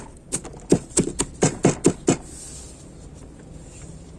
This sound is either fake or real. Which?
real